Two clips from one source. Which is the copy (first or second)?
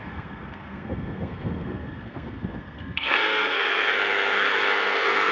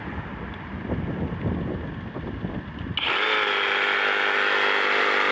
first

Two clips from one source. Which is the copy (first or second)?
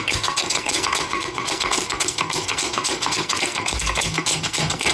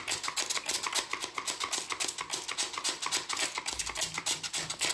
first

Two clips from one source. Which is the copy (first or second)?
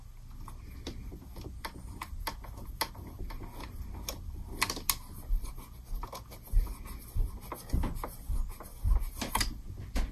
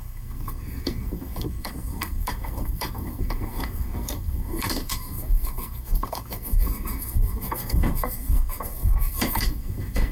second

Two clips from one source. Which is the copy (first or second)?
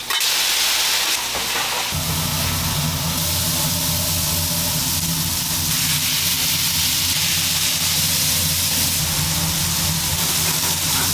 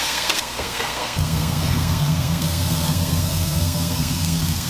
second